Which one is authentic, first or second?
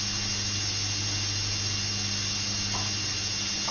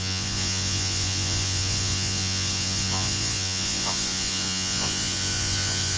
first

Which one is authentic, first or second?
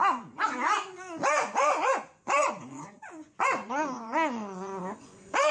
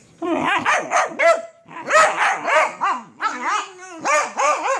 second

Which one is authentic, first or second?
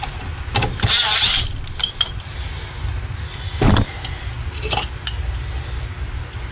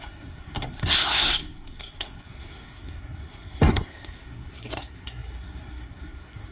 first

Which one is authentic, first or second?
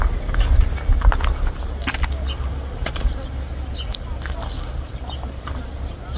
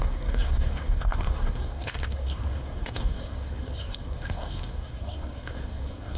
first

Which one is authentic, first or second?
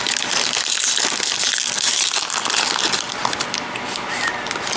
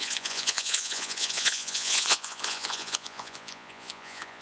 first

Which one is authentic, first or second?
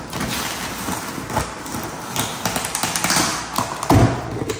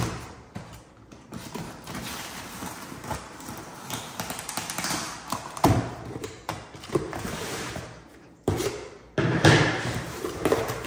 first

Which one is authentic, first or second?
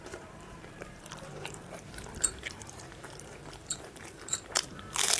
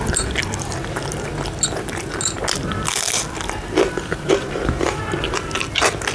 second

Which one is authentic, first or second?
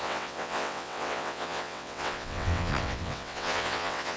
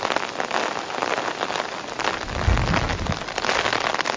second